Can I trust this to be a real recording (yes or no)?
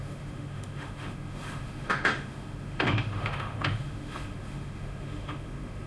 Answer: no